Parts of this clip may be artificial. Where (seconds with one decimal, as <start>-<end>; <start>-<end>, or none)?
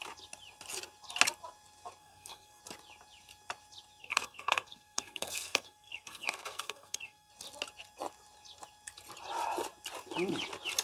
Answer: 2.0-2.6; 4.0-7.3